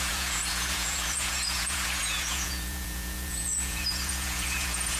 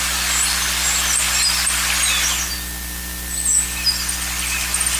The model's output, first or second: first